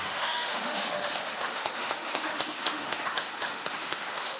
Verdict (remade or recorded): remade